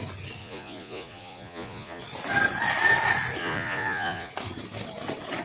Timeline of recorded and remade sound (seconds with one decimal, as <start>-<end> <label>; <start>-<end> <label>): 0.0-0.4 recorded; 0.4-2.0 remade; 2.0-3.4 recorded; 3.4-4.3 remade; 4.3-5.4 recorded